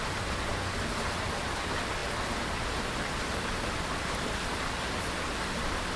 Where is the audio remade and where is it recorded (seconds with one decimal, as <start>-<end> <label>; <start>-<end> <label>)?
0.0-6.0 recorded